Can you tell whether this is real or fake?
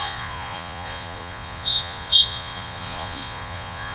fake